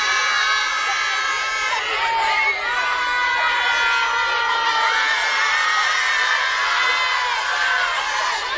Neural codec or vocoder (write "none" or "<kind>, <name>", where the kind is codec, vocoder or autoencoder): none